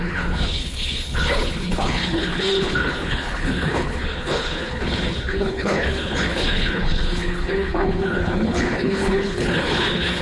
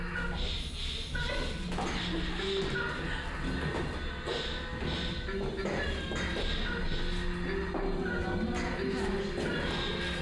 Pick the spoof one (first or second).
first